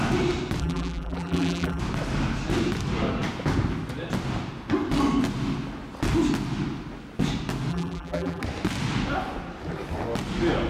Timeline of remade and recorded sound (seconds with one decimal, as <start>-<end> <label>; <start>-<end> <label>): 0.0-0.6 recorded; 0.6-1.8 remade; 1.8-7.7 recorded; 7.7-8.4 remade; 8.4-10.7 recorded